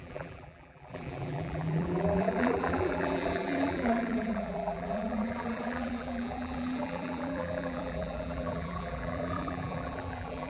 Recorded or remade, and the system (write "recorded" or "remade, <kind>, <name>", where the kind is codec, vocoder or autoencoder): remade, vocoder, BigVGAN v2